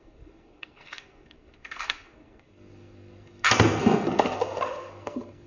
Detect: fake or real fake